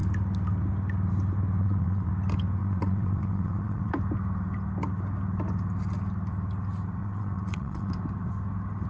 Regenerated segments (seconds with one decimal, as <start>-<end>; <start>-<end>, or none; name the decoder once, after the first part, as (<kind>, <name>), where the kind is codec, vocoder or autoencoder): 1.6-2.1 (vocoder, WaveNeXt); 2.6-3.9; 7.0-7.9